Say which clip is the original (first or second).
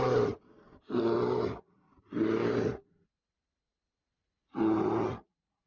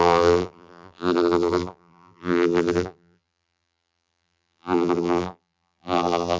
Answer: first